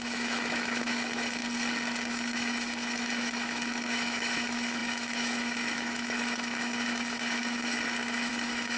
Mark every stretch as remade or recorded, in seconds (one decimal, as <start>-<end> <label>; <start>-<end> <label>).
0.0-1.4 remade; 1.4-2.1 recorded; 2.1-8.8 remade